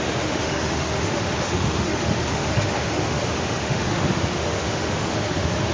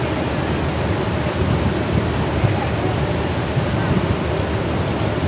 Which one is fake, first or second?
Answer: first